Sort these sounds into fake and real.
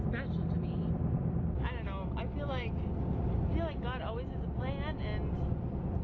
real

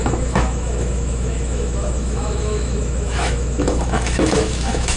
fake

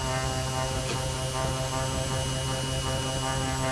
real